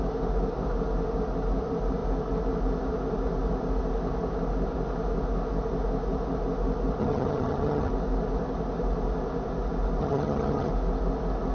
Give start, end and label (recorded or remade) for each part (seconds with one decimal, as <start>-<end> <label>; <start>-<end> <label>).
0.0-7.0 recorded; 7.0-7.9 remade; 7.9-10.0 recorded; 10.0-10.7 remade; 10.7-11.5 recorded